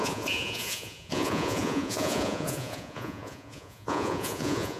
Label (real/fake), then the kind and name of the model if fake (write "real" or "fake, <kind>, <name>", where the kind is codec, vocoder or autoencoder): fake, vocoder, Vocos